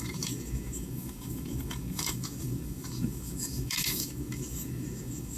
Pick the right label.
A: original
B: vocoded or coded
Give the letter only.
B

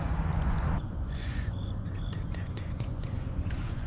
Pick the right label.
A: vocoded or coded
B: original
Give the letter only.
A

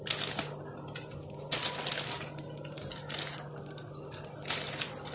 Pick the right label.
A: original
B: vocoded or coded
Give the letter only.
A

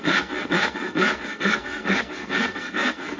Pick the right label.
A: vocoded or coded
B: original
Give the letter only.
A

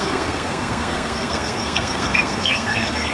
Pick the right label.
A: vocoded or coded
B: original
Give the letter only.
A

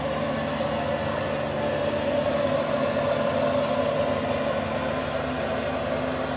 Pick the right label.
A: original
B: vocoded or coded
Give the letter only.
A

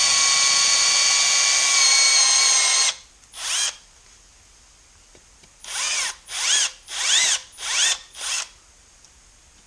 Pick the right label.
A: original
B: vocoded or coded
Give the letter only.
A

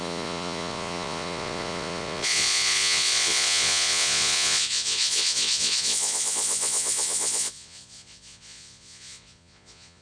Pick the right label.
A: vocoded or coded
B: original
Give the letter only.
A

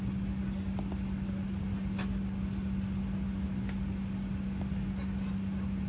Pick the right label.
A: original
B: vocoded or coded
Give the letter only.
A